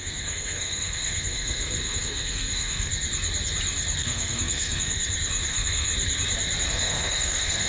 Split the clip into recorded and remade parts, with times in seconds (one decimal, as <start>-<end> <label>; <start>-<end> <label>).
0.0-2.9 remade; 2.9-4.0 recorded; 4.0-5.0 remade; 5.0-5.5 recorded; 5.5-5.9 remade; 5.9-6.7 recorded; 6.7-7.7 remade